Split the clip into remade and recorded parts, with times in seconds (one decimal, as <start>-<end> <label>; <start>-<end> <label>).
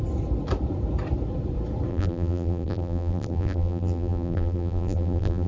0.0-1.9 recorded; 1.9-5.5 remade